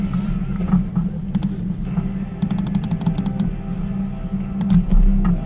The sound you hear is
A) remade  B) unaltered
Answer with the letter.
B